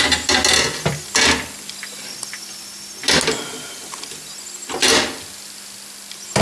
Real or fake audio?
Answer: real